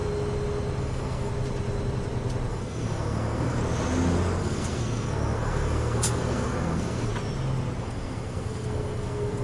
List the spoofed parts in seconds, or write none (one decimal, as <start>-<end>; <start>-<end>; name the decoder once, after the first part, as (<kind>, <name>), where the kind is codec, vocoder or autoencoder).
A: 0.8-1.3 (codec, SNAC); 2.5-3.6; 4.4-7.1; 7.8-9.4

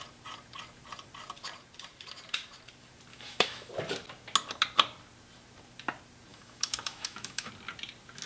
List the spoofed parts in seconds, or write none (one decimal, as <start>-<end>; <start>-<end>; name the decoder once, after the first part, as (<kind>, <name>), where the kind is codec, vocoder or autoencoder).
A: 3.1-3.7 (autoencoder, DAC-VAE); 6.3-7.5

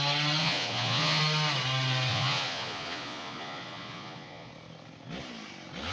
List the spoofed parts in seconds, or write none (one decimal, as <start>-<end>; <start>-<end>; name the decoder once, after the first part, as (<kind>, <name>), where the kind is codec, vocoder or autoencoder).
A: 0.4-1.2 (vocoder, Vocos); 2.1-4.5

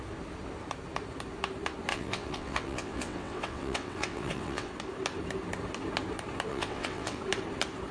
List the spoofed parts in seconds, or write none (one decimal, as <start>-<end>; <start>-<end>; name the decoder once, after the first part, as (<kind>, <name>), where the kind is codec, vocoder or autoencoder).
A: 1.9-4.7 (vocoder, WaveNeXt); 6.5-7.2